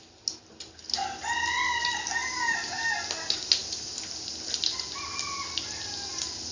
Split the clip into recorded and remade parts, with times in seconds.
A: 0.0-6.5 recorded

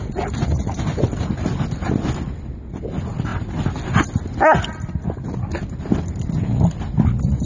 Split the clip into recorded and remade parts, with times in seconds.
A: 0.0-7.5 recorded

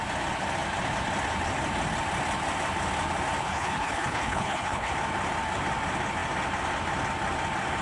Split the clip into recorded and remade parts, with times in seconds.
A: 0.0-3.4 recorded; 3.4-4.9 remade; 4.9-7.8 recorded

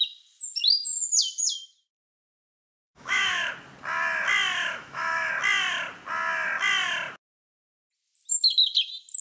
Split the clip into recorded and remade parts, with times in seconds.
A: 0.0-1.9 recorded; 1.9-3.5 remade; 3.5-4.6 recorded; 4.6-5.3 remade; 5.3-9.2 recorded

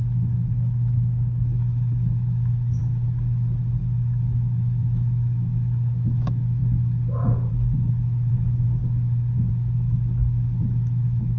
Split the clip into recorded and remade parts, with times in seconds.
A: 0.0-2.8 remade; 2.8-3.8 recorded; 3.8-6.6 remade; 6.6-7.5 recorded; 7.5-8.8 remade; 8.8-9.5 recorded; 9.5-11.4 remade

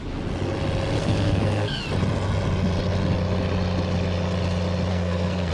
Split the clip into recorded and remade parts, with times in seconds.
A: 0.0-1.0 recorded; 1.0-1.8 remade; 1.8-4.9 recorded; 4.9-5.5 remade